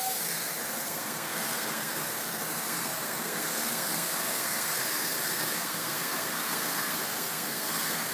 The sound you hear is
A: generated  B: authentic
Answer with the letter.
A